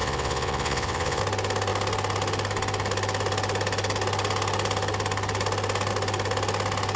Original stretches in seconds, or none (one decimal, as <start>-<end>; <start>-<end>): 1.2-7.0